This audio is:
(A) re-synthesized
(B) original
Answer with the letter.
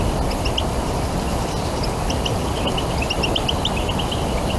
B